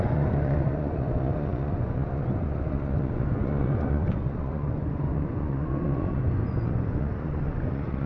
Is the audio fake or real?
fake